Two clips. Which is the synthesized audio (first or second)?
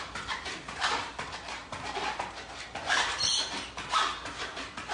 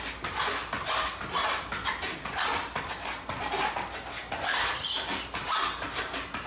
first